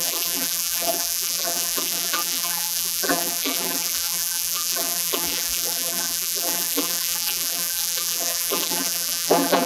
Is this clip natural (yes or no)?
no